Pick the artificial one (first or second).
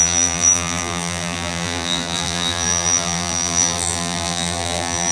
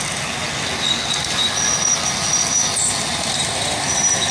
first